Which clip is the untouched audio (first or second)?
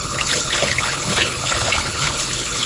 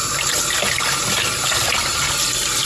second